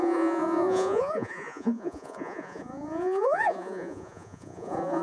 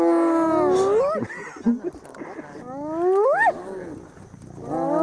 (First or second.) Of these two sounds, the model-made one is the first